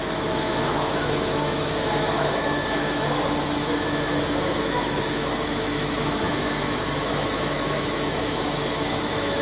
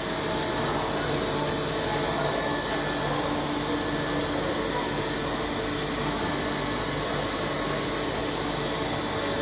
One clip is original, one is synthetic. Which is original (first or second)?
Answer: second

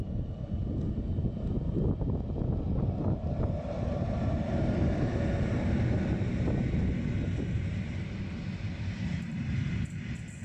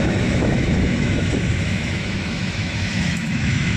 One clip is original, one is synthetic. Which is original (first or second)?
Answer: first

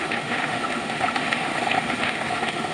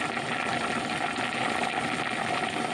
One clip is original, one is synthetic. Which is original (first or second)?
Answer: second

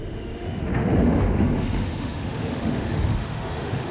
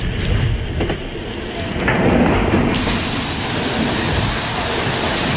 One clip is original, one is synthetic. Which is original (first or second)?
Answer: second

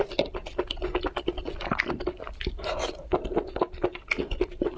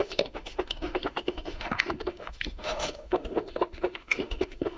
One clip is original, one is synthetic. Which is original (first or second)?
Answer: first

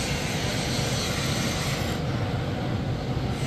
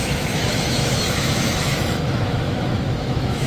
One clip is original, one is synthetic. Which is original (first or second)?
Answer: first